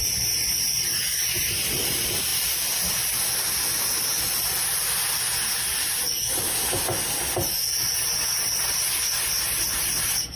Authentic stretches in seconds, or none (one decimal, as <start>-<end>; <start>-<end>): 0.0-10.4